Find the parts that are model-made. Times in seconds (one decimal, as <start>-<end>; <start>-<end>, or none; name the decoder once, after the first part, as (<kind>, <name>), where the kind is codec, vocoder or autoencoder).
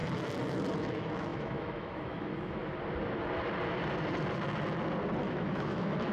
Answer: 0.9-2.6 (autoencoder, DAC-VAE); 5.2-6.1